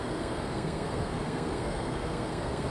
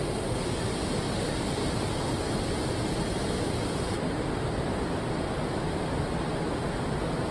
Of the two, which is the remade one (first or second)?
first